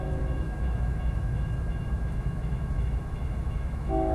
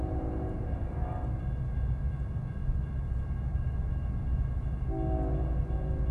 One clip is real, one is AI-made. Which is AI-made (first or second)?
first